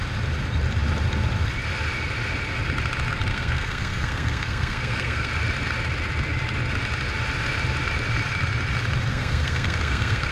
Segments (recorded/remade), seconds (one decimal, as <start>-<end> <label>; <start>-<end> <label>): 0.0-3.3 recorded; 3.3-5.3 remade; 5.3-9.1 recorded; 9.1-10.3 remade